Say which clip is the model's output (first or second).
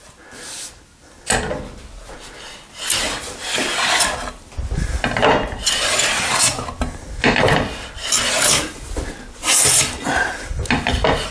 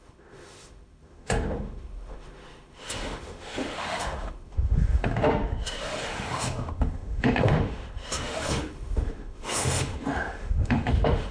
second